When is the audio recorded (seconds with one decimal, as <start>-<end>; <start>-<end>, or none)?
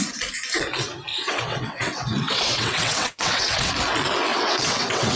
0.0-1.1; 3.7-4.3